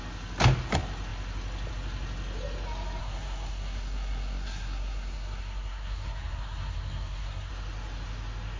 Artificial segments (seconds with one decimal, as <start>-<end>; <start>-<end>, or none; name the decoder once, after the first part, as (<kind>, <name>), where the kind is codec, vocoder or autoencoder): 3.0-7.5 (codec, SNAC)